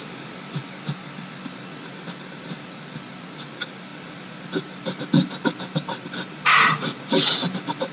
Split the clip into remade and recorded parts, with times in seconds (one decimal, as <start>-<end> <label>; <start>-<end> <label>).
0.0-7.9 recorded